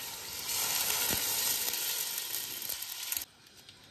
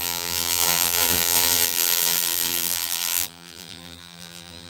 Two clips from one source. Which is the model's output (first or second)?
second